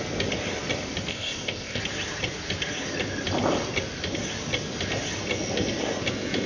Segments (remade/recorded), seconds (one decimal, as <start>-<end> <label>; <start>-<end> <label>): 0.0-1.1 recorded; 1.1-1.8 remade; 1.8-6.5 recorded

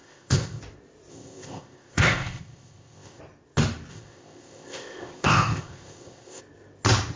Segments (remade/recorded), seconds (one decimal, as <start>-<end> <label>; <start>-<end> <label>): 0.0-0.6 remade; 0.6-1.1 recorded; 1.1-3.2 remade; 3.2-3.9 recorded; 3.9-6.4 remade; 6.4-7.2 recorded

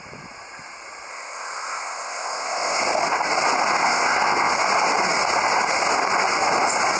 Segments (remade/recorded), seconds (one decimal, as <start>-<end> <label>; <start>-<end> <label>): 0.0-1.1 recorded; 1.1-2.8 remade; 2.8-3.8 recorded; 3.8-4.5 remade; 4.5-7.0 recorded

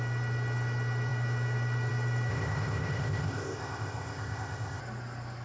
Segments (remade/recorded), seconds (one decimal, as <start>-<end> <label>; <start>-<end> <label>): 0.0-2.3 recorded; 2.3-4.8 remade; 4.8-5.4 recorded

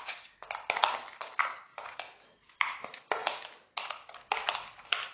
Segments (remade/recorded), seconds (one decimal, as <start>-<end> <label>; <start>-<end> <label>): 0.0-5.1 recorded

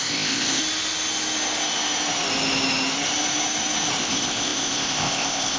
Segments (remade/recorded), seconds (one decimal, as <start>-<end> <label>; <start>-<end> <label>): 0.0-0.6 remade; 0.6-4.0 recorded; 4.0-5.6 remade

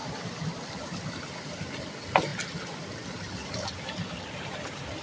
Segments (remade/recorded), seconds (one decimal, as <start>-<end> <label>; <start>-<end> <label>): 0.0-5.0 recorded